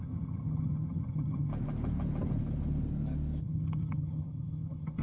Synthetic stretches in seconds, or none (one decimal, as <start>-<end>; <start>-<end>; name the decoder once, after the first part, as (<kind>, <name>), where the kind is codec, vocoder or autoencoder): 0.0-1.5 (vocoder, HiFi-GAN); 3.4-5.0